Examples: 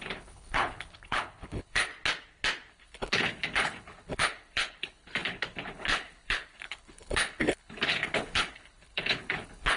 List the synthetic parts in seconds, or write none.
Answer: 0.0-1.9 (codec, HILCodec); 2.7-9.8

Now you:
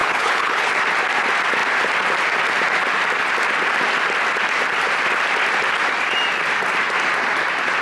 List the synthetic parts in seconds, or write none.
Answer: 0.0-0.7 (codec, HILCodec)

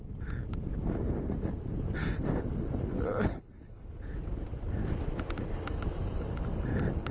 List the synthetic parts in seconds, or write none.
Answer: 2.9-3.9 (codec, HILCodec)

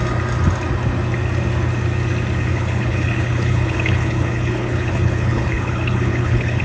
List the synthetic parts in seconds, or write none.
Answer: 2.5-6.6 (codec, HILCodec)